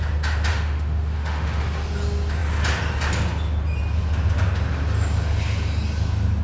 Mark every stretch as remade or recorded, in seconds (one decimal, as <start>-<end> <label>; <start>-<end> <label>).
0.0-0.5 recorded; 0.5-1.6 remade; 1.6-6.4 recorded

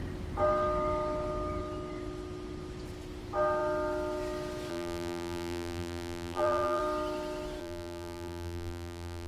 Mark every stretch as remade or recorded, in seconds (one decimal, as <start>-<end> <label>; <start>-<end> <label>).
0.0-4.7 recorded; 4.7-6.8 remade; 6.8-7.6 recorded; 7.6-9.3 remade